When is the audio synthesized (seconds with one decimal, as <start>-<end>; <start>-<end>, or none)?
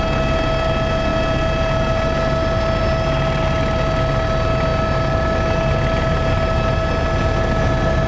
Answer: none